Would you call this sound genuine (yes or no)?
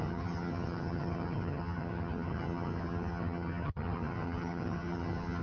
no